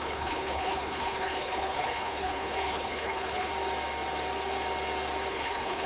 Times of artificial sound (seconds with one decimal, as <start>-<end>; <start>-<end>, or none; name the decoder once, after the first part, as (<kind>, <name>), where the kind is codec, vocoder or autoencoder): 0.0-3.5 (codec, HILCodec); 5.3-5.9